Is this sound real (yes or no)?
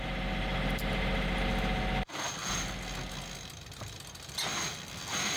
yes